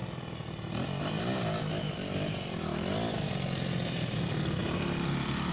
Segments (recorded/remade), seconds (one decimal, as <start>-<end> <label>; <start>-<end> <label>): 0.0-5.5 recorded